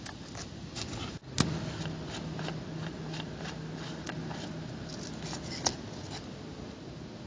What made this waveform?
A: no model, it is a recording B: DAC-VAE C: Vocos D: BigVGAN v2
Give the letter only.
A